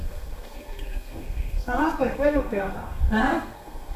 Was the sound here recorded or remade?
remade